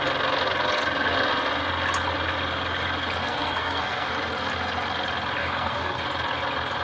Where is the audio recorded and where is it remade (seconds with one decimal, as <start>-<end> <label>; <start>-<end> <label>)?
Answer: 0.0-3.2 recorded; 3.2-4.1 remade; 4.1-5.4 recorded; 5.4-6.0 remade; 6.0-6.8 recorded